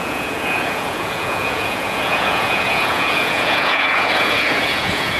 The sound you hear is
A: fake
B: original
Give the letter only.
A